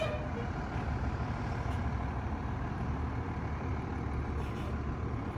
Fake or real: real